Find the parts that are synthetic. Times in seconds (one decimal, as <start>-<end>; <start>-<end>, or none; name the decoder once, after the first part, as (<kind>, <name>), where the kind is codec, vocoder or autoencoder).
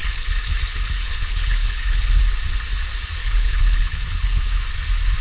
0.0-2.2 (codec, HILCodec); 3.2-4.6